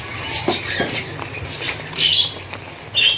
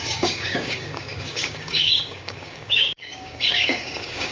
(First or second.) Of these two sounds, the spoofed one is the second